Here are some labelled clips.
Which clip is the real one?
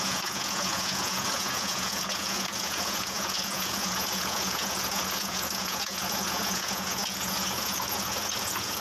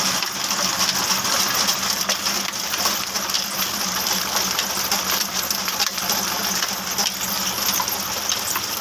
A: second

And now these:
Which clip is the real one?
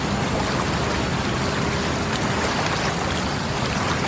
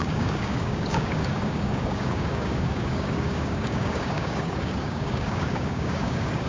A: first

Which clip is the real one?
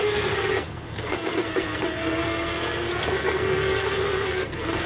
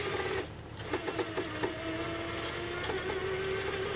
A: second